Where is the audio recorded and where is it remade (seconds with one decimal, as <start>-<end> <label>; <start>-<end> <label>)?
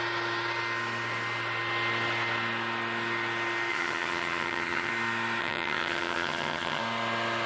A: 0.0-3.7 recorded; 3.7-4.9 remade; 4.9-5.4 recorded; 5.4-6.8 remade; 6.8-7.5 recorded